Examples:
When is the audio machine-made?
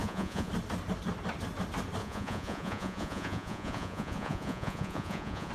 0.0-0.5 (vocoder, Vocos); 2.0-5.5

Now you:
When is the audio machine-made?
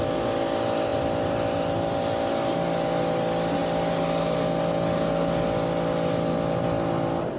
none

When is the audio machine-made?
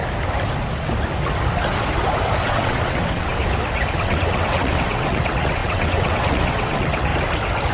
2.5-3.3 (vocoder, WaveNeXt); 4.0-7.1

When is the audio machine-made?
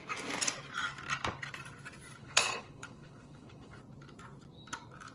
2.2-3.8 (codec, HILCodec)